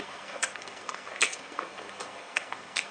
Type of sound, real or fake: fake